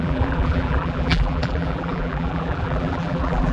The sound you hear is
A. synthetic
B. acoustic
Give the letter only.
A